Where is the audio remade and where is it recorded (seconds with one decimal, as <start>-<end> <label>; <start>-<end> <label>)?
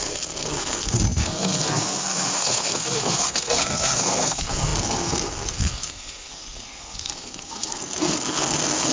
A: 0.0-8.9 remade